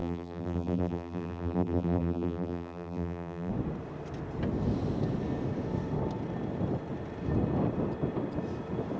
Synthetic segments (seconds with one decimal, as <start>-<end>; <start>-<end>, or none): 0.0-3.5